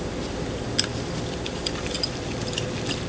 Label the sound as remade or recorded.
remade